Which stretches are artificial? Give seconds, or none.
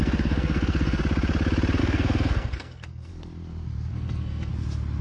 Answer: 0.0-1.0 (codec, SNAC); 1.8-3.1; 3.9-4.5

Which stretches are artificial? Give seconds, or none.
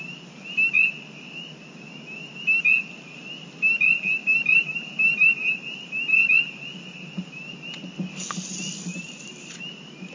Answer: 4.2-6.3 (vocoder, BigVGAN v2); 8.9-9.6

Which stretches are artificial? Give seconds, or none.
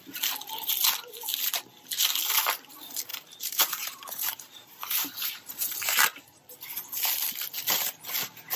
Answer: 3.1-6.5 (vocoder, BigVGAN v2)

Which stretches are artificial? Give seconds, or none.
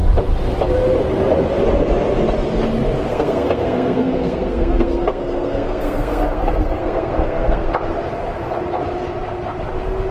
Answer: 3.1-7.7 (codec, SNAC)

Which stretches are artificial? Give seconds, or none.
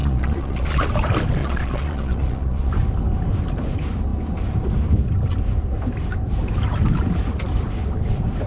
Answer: 0.0-0.9 (vocoder, Vocos); 1.4-2.7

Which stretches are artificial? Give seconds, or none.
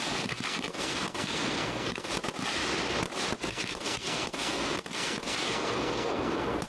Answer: 0.0-2.1 (codec, SNAC); 3.4-6.7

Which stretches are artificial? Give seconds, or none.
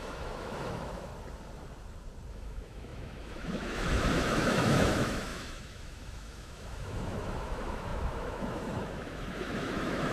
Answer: 0.0-1.1 (autoencoder, DAC-VAE); 2.3-10.1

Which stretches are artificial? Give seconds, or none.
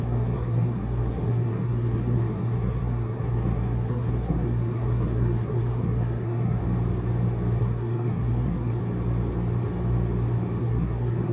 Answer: 0.0-6.6 (codec, SNAC); 7.6-8.8; 10.6-11.3